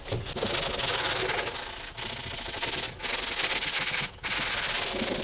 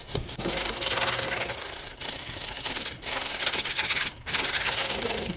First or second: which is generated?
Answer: second